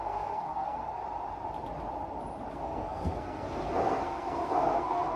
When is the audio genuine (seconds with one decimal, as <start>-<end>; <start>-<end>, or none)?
1.0-2.5